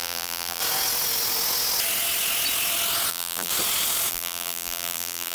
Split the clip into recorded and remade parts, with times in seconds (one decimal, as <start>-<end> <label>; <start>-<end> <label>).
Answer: 0.0-0.6 remade; 0.6-3.1 recorded; 3.1-3.5 remade; 3.5-4.1 recorded; 4.1-5.3 remade